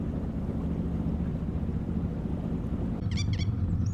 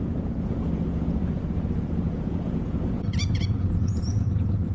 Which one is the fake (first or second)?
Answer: second